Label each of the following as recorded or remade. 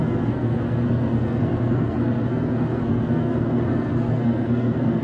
remade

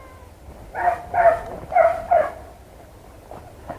recorded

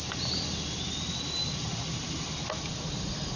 recorded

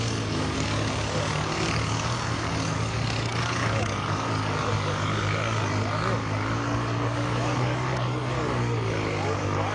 remade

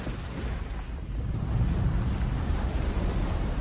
recorded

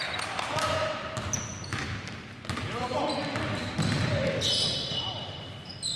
recorded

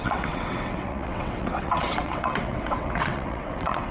remade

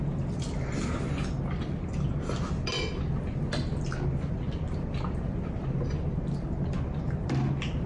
recorded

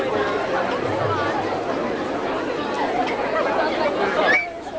recorded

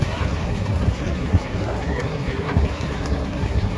remade